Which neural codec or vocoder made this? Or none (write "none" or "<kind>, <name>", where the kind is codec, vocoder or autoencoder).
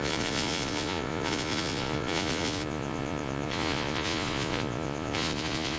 vocoder, Vocos